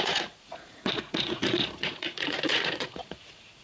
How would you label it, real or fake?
fake